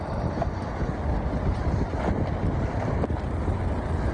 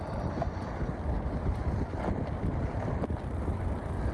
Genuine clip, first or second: first